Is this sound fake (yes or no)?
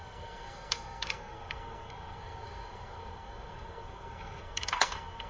yes